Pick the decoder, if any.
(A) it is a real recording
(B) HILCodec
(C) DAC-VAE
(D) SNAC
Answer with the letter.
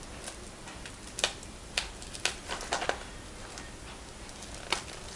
A